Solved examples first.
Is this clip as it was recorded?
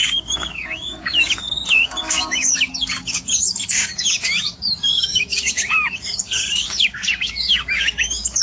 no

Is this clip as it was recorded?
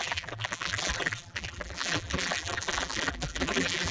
no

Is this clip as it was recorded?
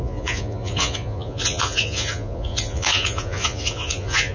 no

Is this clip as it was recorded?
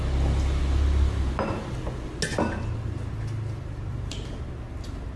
yes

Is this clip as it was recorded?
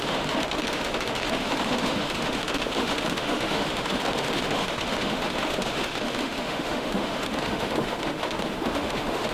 no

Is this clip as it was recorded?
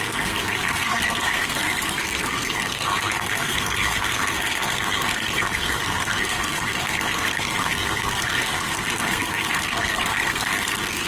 no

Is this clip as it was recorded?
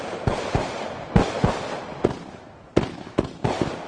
yes